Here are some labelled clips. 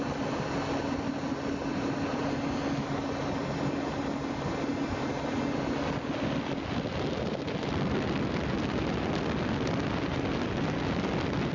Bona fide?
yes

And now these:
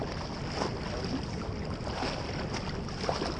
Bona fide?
no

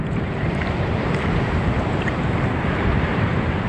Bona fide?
no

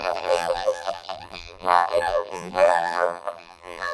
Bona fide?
no